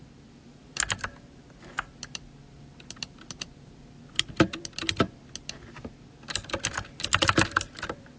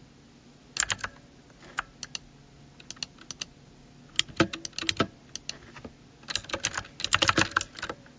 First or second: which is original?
second